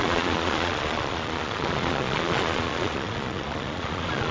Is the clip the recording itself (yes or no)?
no